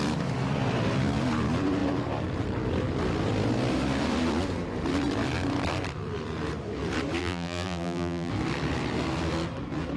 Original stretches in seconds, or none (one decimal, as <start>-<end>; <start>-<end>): 0.0-7.2; 8.3-10.0

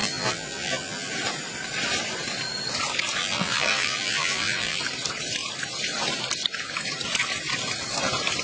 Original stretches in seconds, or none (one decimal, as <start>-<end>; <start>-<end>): 1.1-3.2; 4.8-8.4

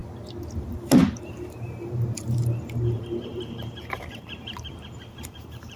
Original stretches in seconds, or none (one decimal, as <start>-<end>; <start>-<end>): 0.0-0.6

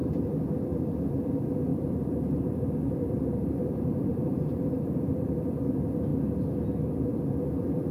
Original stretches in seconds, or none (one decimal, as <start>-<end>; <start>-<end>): 0.5-1.7; 5.2-7.9

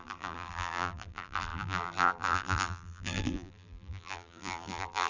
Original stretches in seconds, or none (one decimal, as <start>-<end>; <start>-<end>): none

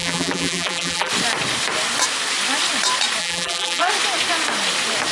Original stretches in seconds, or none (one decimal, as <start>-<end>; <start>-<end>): 1.1-3.2; 3.9-5.1

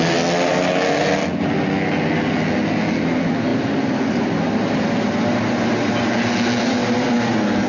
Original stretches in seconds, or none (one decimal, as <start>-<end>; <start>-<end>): 0.0-3.5; 4.8-6.8